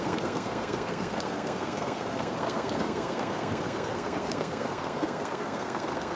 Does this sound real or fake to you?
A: fake